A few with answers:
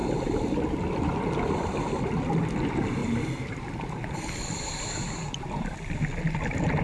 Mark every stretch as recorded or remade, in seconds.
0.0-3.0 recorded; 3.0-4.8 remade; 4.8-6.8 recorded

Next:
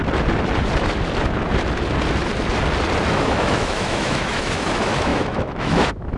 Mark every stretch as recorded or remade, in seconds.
0.0-3.1 recorded; 3.1-6.2 remade

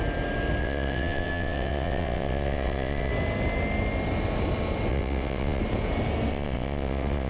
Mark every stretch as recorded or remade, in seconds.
0.0-0.6 recorded; 0.6-3.1 remade; 3.1-4.9 recorded; 4.9-5.6 remade; 5.6-6.3 recorded; 6.3-7.3 remade

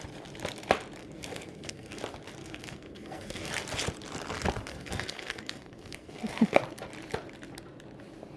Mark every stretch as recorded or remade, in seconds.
0.0-1.0 recorded; 1.0-2.0 remade; 2.0-2.4 recorded; 2.4-3.5 remade; 3.5-4.7 recorded; 4.7-6.6 remade; 6.6-8.4 recorded